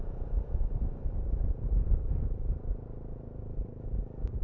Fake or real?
real